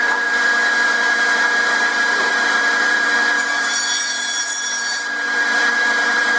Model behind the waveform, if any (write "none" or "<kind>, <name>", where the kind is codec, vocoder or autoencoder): vocoder, BigVGAN v2